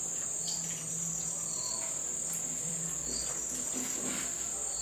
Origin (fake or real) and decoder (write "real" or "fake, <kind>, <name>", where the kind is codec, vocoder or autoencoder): fake, vocoder, BigVGAN v2